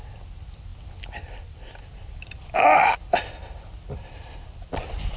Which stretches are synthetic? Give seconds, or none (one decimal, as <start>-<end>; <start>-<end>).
none